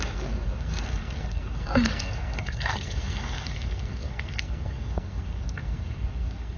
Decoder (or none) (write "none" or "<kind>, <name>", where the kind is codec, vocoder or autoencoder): codec, SNAC